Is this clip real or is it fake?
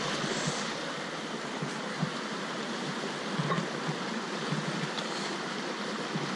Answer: real